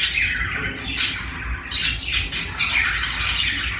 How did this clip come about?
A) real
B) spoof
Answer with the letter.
A